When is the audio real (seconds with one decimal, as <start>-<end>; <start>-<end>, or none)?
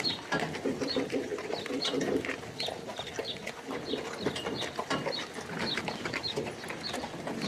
0.0-7.5